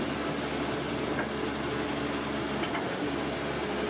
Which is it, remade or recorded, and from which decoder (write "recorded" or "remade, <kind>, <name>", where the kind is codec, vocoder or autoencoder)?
recorded